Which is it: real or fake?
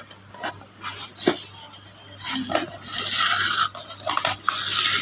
real